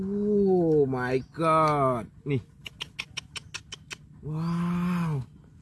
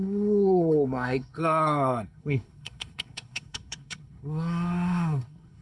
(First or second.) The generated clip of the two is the second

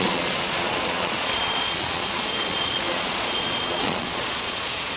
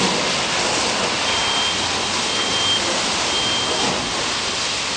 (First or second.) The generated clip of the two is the first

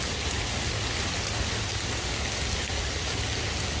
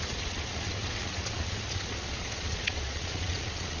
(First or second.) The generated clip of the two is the second